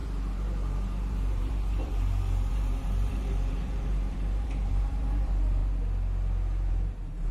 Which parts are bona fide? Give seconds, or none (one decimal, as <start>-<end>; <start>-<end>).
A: 5.6-6.7